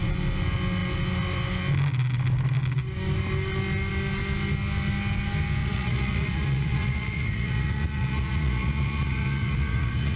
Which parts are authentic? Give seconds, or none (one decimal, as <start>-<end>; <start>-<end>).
0.0-5.6